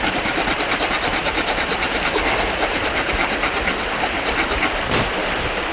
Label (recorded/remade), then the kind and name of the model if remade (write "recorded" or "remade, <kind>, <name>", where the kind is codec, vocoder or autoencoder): recorded